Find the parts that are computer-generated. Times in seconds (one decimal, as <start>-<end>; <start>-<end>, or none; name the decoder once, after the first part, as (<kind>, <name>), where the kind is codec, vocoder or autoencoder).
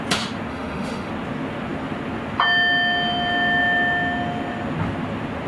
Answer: 0.5-1.1 (autoencoder, DAC-VAE)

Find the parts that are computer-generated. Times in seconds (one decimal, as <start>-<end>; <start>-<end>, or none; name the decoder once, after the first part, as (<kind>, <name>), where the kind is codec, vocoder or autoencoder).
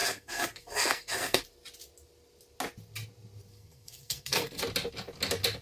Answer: 0.0-1.4 (codec, SNAC); 3.5-4.6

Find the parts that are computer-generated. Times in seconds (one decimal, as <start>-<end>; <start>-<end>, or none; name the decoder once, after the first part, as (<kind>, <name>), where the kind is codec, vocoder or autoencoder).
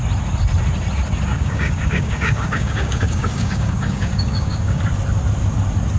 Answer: 1.3-4.8 (codec, DAC)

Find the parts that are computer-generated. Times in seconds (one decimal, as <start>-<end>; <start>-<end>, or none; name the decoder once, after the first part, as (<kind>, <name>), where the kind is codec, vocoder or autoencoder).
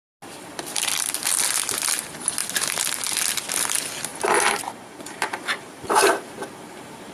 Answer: 4.1-6.5 (vocoder, BigVGAN v2)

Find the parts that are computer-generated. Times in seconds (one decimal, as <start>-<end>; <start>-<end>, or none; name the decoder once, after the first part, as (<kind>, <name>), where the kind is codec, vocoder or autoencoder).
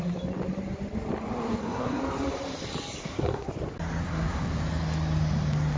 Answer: 1.5-2.0 (codec, SNAC); 3.0-3.5; 4.0-4.6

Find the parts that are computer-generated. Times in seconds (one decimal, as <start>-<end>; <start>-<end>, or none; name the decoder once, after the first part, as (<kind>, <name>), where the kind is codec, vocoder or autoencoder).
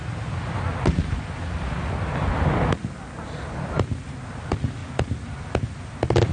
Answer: none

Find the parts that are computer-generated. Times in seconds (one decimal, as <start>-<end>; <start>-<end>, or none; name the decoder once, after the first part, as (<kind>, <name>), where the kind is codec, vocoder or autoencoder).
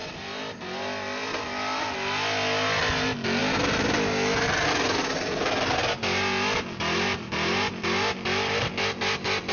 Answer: none